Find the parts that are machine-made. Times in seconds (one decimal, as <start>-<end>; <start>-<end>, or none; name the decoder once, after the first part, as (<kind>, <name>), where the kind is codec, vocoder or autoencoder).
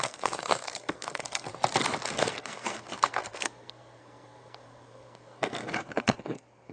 0.0-1.5 (codec, SNAC); 2.1-6.7